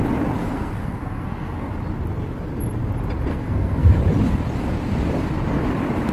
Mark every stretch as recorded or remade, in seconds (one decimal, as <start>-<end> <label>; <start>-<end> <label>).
0.0-0.4 recorded; 0.4-1.7 remade; 1.7-3.3 recorded; 3.3-4.0 remade; 4.0-6.1 recorded